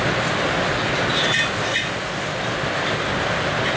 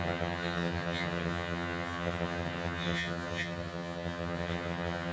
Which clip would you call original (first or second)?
first